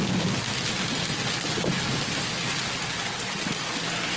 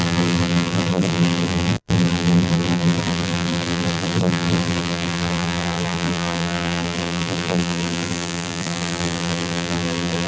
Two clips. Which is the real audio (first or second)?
first